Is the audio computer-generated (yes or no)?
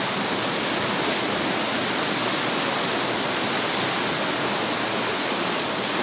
no